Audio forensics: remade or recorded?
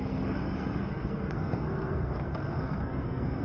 remade